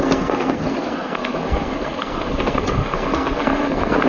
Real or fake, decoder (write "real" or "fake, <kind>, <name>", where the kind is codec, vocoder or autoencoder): fake, codec, SNAC